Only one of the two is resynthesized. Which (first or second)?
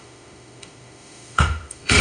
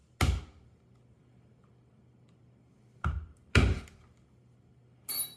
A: first